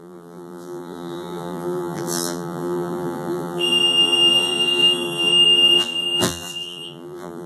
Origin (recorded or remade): remade